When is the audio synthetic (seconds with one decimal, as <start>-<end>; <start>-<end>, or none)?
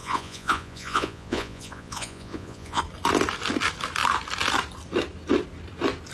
0.0-2.8